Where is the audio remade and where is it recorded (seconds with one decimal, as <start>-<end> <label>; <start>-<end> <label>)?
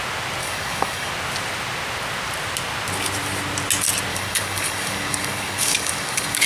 0.0-0.4 recorded; 0.4-1.1 remade; 1.1-4.1 recorded; 4.1-6.5 remade